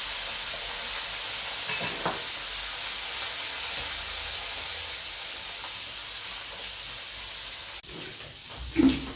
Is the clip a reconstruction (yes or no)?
no